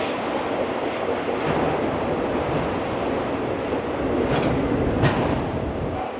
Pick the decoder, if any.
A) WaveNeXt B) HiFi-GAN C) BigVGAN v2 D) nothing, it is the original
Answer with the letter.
D